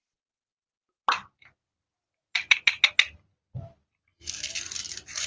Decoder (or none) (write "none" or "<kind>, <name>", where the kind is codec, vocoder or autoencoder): none